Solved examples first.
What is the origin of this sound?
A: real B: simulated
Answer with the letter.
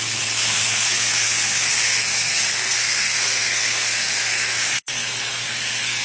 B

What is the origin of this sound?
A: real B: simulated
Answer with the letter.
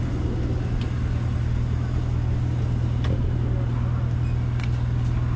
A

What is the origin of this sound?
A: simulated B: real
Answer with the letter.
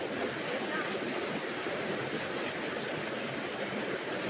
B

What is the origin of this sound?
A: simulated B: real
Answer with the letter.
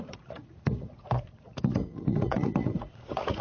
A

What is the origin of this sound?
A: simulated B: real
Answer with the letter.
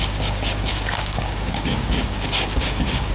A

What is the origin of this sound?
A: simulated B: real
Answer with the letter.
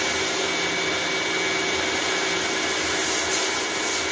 B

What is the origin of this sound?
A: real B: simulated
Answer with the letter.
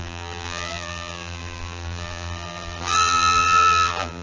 B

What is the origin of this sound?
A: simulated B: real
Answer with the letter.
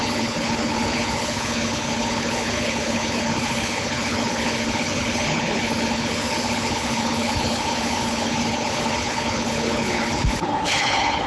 A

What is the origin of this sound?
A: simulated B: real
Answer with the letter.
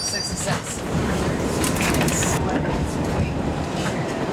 A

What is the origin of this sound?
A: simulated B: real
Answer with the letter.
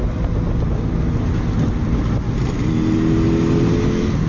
B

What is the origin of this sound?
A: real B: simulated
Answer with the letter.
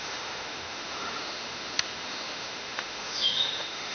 B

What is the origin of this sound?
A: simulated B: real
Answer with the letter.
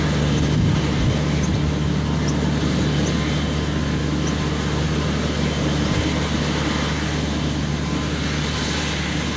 B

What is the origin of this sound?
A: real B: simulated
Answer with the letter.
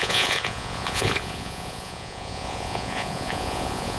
B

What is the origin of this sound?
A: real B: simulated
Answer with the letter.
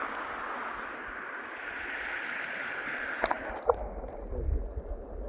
A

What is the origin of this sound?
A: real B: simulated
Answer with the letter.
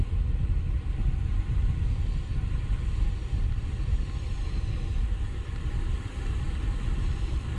A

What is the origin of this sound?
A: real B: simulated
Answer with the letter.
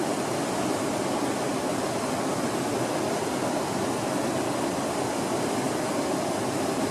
A